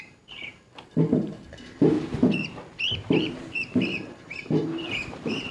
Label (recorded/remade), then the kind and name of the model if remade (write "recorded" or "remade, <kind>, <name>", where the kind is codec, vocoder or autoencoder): remade, vocoder, BigVGAN v2